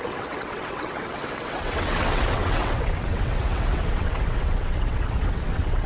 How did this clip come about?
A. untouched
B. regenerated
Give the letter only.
B